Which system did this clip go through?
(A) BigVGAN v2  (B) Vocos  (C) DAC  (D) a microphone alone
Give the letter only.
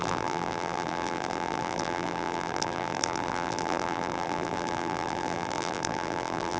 A